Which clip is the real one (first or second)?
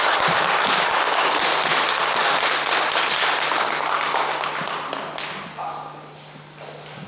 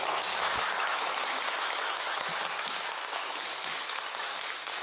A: first